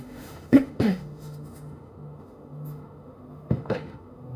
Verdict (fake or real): fake